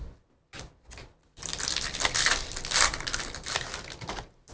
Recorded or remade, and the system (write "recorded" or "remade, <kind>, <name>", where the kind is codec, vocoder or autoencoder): recorded